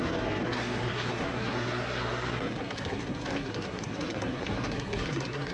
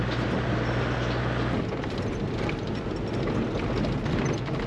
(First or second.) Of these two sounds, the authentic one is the second